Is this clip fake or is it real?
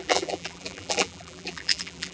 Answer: fake